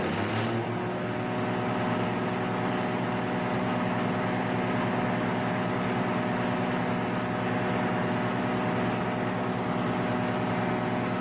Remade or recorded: recorded